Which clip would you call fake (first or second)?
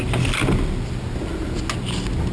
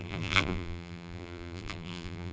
second